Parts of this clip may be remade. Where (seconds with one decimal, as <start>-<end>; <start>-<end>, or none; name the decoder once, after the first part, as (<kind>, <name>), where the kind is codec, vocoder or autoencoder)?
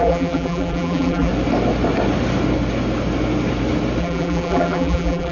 0.0-1.3 (vocoder, BigVGAN v2); 4.0-5.3